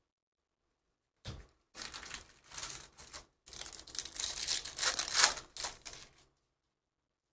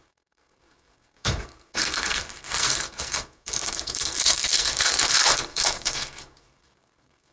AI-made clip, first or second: second